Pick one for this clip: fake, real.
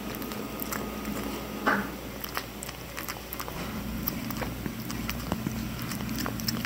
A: fake